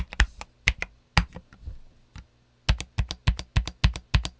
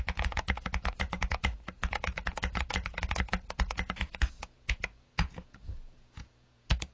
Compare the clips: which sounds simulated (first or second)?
second